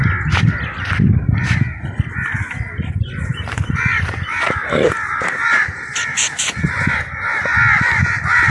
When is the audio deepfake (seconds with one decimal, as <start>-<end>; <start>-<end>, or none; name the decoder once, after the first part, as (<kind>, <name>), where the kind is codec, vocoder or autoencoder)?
3.3-7.4 (vocoder, BigVGAN v2)